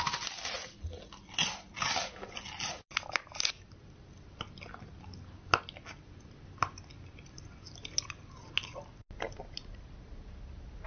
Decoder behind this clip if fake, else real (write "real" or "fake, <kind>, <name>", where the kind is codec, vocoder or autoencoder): real